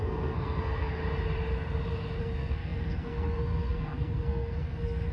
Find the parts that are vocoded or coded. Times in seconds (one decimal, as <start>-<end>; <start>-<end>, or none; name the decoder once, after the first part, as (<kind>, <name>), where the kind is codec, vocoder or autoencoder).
0.0-1.0 (codec, SNAC); 2.2-5.1

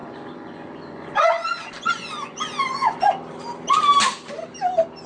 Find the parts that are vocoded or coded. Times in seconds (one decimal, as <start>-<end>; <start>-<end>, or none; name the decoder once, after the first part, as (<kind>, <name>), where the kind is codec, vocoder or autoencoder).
0.0-3.1 (vocoder, Vocos)

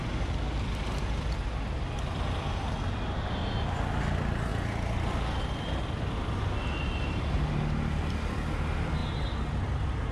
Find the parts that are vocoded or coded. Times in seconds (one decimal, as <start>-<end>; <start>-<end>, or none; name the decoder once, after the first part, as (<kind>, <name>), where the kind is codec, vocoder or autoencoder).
none

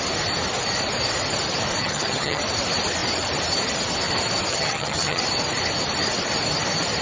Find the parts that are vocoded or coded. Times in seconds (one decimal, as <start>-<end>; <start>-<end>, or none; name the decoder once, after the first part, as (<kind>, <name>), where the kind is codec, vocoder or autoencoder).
1.8-2.4 (vocoder, HiFi-GAN); 4.5-5.2

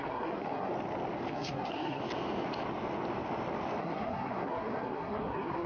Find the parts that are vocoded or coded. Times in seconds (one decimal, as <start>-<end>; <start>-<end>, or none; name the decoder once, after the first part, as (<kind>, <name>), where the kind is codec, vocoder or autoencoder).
0.0-0.7 (codec, SNAC); 1.3-2.0; 3.8-5.7

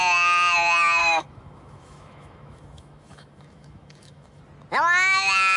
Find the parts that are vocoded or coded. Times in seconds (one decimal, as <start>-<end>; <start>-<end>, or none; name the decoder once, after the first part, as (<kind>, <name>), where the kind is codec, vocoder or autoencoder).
1.0-4.4 (autoencoder, DAC-VAE)

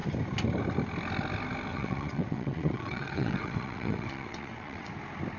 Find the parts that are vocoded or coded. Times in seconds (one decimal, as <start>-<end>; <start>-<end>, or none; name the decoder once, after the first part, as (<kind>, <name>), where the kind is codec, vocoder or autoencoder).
1.7-4.9 (vocoder, WaveNeXt)